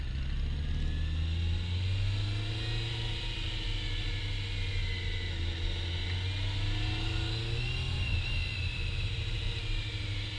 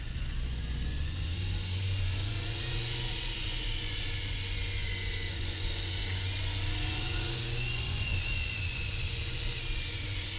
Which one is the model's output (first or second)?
second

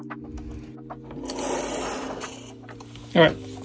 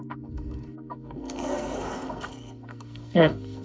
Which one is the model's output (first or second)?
second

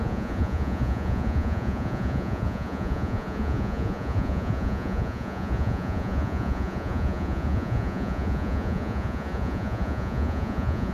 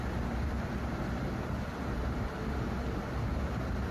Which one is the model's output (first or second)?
first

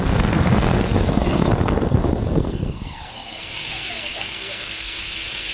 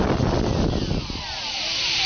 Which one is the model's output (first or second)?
first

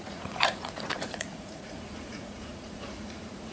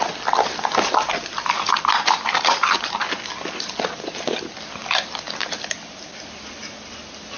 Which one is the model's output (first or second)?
first